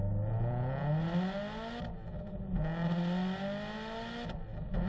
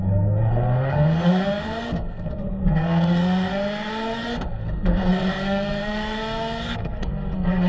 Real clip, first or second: first